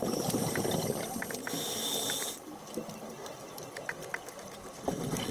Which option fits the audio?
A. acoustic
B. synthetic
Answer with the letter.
A